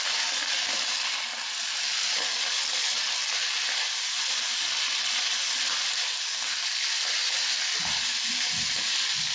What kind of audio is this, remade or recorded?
recorded